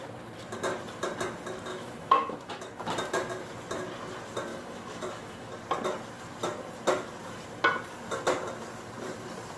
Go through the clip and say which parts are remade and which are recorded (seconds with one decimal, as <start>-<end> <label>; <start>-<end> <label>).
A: 0.0-1.7 recorded; 1.7-2.8 remade; 2.8-4.5 recorded; 4.5-5.5 remade; 5.5-9.6 recorded